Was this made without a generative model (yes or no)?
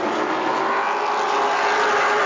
yes